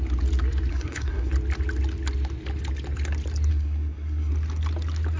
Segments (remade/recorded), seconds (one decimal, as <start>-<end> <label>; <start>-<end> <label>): 0.0-0.7 recorded; 0.7-1.3 remade; 1.3-3.5 recorded; 3.5-4.3 remade; 4.3-5.2 recorded